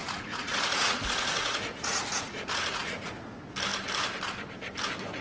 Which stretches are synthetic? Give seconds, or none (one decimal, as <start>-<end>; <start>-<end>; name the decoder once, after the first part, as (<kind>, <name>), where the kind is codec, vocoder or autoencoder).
0.0-3.1 (vocoder, Vocos)